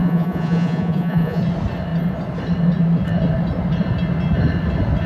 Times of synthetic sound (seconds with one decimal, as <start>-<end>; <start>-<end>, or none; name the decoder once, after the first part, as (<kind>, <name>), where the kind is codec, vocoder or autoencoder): 0.0-1.4 (vocoder, Vocos)